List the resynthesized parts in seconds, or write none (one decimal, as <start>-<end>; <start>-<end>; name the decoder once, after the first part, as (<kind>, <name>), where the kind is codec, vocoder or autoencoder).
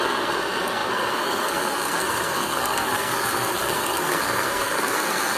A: 0.0-5.4 (codec, SNAC)